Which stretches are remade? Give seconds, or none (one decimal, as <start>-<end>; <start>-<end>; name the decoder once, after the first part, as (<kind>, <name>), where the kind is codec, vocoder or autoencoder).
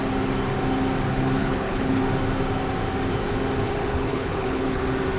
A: 1.4-2.0 (codec, HILCodec); 3.9-4.8